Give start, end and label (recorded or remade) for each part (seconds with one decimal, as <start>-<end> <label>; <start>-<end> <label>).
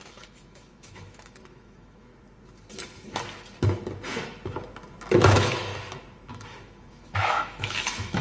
0.0-2.1 remade; 2.1-5.1 recorded; 5.1-5.7 remade; 5.7-6.3 recorded; 6.3-8.2 remade